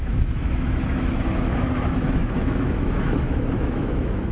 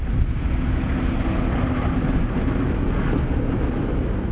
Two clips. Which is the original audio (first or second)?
second